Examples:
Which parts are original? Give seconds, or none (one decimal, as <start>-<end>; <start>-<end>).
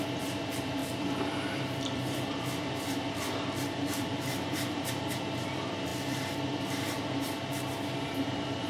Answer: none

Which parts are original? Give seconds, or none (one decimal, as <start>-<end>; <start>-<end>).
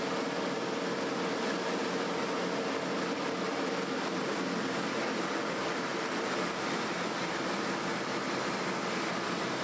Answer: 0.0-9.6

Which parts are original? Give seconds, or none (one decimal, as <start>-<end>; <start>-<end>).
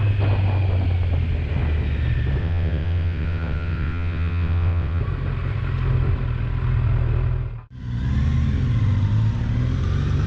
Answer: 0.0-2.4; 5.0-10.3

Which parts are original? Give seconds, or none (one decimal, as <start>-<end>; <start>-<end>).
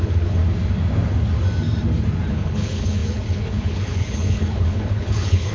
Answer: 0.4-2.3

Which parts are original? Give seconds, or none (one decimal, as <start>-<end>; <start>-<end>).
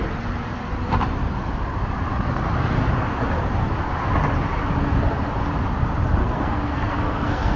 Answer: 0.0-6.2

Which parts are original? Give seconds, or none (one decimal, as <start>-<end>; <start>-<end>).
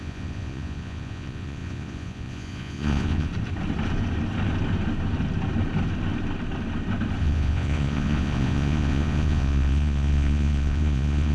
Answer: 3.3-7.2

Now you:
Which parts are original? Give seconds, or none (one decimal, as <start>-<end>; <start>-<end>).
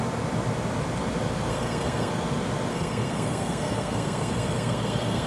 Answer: 0.0-1.5; 2.1-2.7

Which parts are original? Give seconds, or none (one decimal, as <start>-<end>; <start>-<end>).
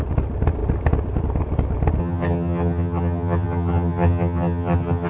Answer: 0.0-2.0